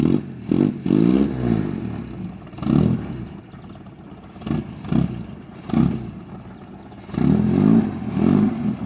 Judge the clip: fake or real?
real